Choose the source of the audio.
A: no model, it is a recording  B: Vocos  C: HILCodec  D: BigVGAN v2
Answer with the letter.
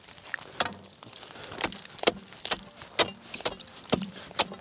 A